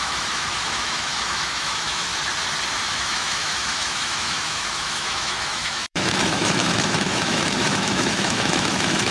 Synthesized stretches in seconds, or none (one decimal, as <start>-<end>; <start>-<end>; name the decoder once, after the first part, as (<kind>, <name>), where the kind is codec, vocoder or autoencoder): 0.0-2.1 (autoencoder, DAC-VAE); 2.7-9.1